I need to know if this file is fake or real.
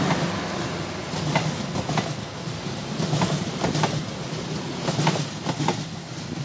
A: real